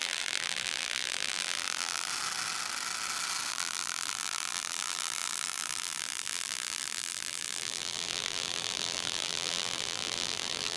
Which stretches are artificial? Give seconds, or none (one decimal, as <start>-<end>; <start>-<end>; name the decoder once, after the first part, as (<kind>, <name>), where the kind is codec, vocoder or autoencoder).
0.0-2.1 (vocoder, BigVGAN v2); 3.5-10.8